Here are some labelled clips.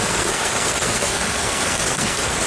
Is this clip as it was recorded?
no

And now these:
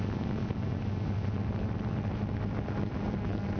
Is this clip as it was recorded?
yes